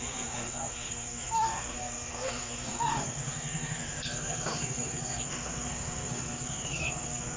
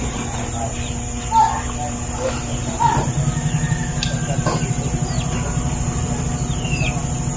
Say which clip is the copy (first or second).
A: first